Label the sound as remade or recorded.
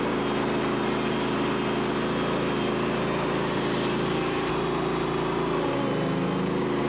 recorded